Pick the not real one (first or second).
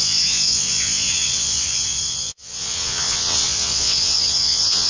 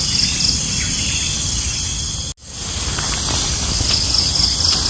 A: first